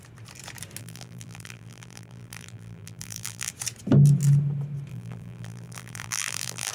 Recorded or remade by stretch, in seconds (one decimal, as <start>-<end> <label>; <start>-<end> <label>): 0.0-0.8 recorded; 0.8-3.5 remade; 3.5-4.9 recorded; 4.9-6.7 remade